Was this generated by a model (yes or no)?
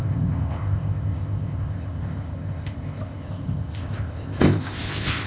yes